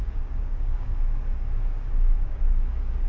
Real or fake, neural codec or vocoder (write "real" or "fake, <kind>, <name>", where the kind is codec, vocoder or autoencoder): fake, codec, DAC